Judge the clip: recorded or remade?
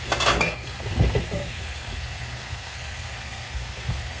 remade